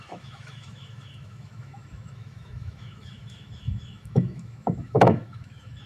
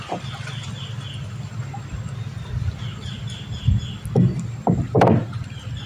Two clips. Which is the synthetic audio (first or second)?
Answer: first